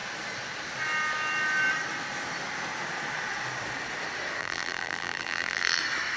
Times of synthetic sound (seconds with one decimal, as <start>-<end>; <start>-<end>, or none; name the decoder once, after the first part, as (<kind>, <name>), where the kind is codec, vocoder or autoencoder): 4.4-5.8 (vocoder, BigVGAN v2)